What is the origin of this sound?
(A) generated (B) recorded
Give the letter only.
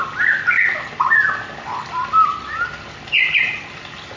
B